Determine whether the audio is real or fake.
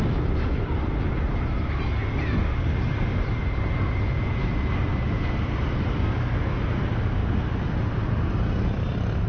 real